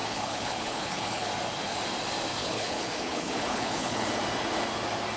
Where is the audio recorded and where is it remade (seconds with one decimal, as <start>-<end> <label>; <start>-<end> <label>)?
0.0-1.3 remade; 1.3-2.4 recorded; 2.4-4.1 remade; 4.1-5.2 recorded